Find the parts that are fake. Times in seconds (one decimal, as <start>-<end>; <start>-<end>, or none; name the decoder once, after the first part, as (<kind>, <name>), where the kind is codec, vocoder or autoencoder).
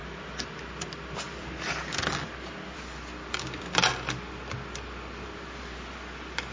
none